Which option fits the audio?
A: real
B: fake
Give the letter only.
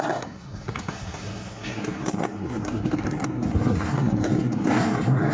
B